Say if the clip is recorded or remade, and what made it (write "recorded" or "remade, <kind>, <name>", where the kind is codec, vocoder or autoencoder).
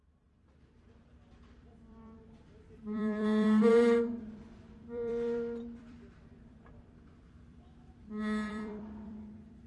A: remade, vocoder, BigVGAN v2